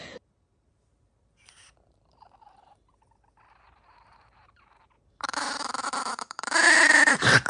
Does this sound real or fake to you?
fake